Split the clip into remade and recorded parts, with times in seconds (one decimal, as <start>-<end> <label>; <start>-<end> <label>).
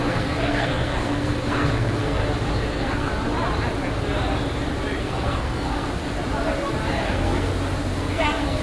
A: 0.0-2.2 remade; 2.2-2.7 recorded; 2.7-3.1 remade; 3.1-5.0 recorded; 5.0-6.0 remade; 6.0-6.9 recorded; 6.9-7.5 remade; 7.5-8.0 recorded; 8.0-8.6 remade